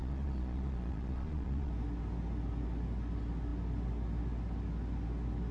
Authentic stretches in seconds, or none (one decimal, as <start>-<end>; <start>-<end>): 1.7-5.5